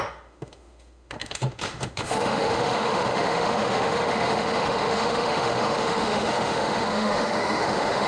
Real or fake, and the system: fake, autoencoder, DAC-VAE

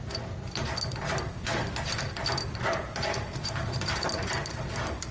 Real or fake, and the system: real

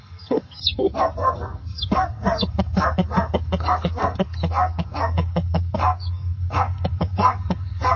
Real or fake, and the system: fake, codec, SNAC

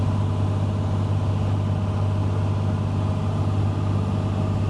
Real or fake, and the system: real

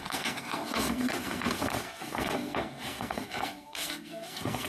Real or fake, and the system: fake, codec, SNAC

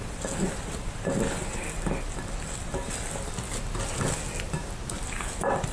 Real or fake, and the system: real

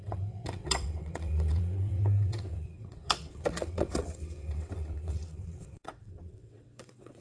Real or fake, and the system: fake, vocoder, WaveNeXt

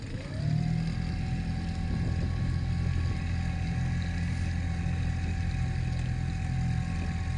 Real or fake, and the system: real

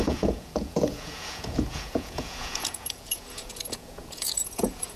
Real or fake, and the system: fake, vocoder, Vocos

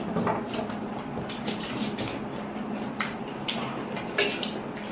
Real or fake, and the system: real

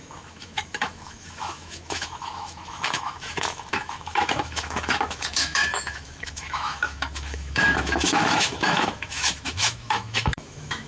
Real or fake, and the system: fake, autoencoder, DAC-VAE